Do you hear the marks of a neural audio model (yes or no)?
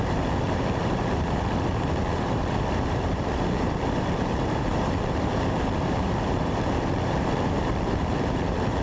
yes